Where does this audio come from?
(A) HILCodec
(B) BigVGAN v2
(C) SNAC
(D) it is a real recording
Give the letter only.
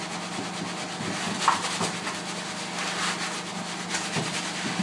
D